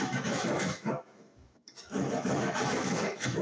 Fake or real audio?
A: fake